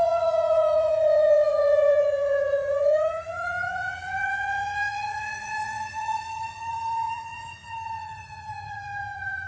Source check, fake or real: fake